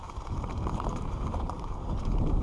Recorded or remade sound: remade